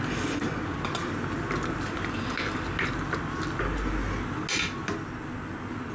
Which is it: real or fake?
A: real